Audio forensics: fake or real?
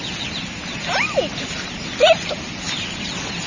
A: real